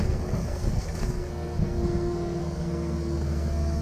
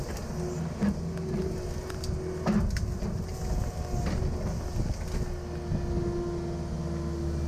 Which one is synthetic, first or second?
first